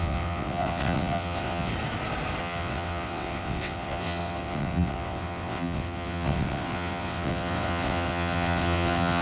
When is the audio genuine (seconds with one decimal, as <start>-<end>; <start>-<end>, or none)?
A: 1.7-2.4